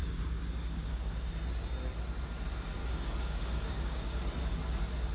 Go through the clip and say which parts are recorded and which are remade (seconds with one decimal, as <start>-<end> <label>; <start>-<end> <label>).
0.0-1.3 remade; 1.3-2.8 recorded; 2.8-4.4 remade; 4.4-5.1 recorded